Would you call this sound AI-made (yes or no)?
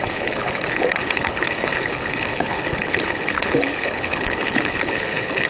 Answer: yes